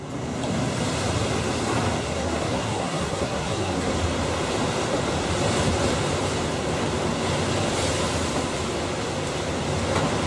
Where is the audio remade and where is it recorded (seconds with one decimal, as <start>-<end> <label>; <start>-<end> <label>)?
0.0-2.0 recorded; 2.0-3.9 remade; 3.9-10.3 recorded